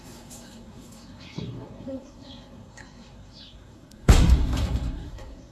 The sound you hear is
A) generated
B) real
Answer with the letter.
A